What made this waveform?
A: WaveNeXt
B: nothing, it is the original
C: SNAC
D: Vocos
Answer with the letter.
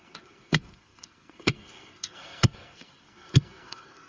C